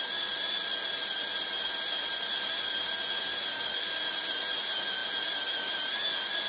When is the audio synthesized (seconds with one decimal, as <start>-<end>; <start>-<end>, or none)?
none